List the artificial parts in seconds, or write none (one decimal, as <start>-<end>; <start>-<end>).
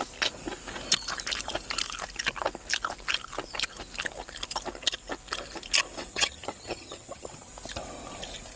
6.1-7.5